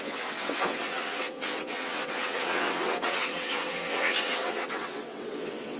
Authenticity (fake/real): fake